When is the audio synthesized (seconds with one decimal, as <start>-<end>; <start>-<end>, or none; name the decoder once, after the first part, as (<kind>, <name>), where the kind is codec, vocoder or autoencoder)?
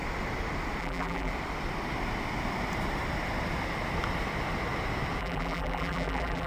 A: 0.8-1.3 (vocoder, BigVGAN v2); 5.2-6.5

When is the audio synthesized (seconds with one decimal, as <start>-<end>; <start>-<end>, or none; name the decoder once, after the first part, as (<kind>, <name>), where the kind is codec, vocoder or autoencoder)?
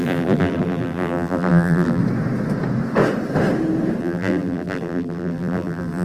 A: 0.0-2.0 (vocoder, BigVGAN v2); 4.0-6.0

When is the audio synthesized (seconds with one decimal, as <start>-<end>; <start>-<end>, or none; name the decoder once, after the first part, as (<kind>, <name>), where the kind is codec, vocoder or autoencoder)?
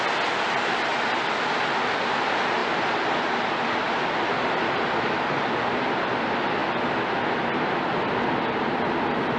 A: none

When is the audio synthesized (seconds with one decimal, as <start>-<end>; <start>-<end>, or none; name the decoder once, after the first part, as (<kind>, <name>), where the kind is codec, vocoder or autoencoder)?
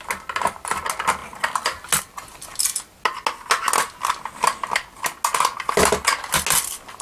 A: none